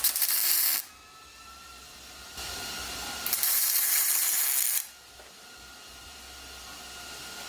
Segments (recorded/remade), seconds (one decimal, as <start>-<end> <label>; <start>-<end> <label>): 0.0-1.3 recorded; 1.3-4.4 remade; 4.4-7.5 recorded